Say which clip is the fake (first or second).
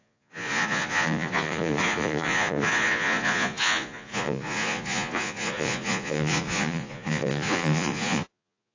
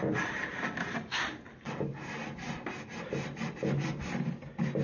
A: first